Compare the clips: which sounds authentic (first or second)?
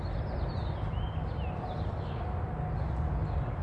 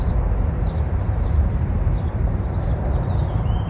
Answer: first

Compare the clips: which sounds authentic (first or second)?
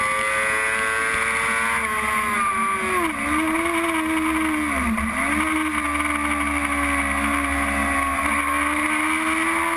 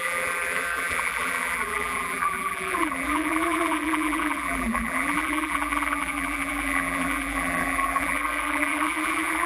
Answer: first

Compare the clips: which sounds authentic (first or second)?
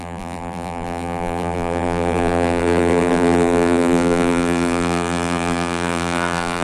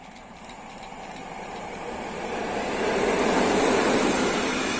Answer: second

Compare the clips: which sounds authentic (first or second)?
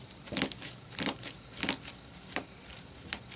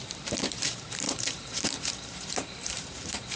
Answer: first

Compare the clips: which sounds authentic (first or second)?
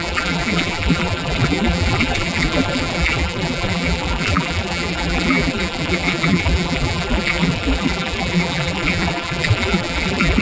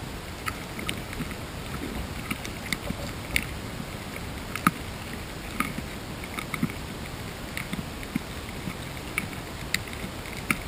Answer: second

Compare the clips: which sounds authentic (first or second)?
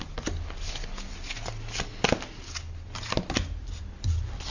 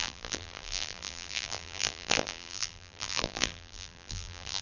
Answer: first